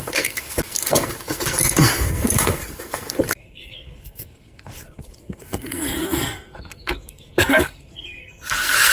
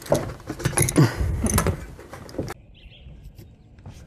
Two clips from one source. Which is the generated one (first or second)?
first